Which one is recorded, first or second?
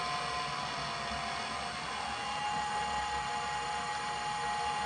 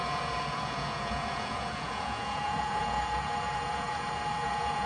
first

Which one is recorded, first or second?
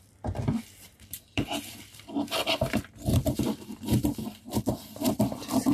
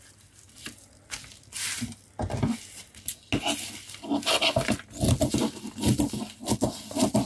second